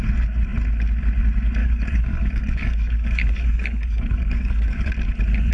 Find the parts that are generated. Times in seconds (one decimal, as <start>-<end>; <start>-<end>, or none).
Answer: 1.6-4.9